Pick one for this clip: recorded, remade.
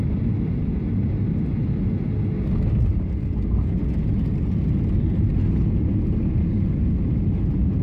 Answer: recorded